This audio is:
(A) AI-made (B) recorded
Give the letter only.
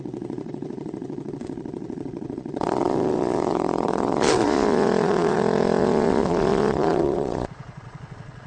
A